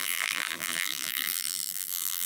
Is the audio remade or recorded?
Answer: remade